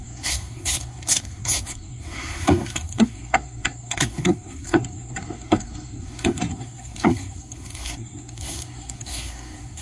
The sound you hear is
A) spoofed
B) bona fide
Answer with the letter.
A